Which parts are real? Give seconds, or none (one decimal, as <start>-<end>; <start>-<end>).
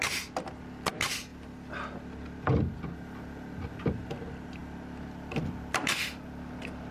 0.0-6.9